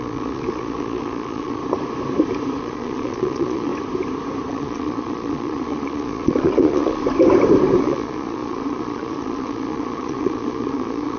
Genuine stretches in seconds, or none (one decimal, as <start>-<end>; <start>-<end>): 1.6-2.6; 3.7-4.5; 7.0-7.8